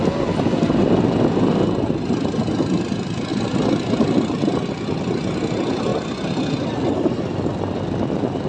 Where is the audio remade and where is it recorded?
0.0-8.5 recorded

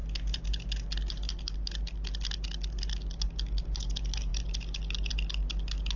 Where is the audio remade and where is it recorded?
0.0-6.0 recorded

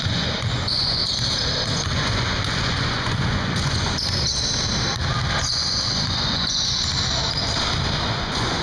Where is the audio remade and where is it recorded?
0.0-1.0 remade; 1.0-1.7 recorded; 1.7-4.3 remade; 4.3-5.4 recorded; 5.4-6.9 remade; 6.9-8.0 recorded; 8.0-8.6 remade